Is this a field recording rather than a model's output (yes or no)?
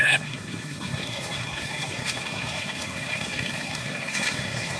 no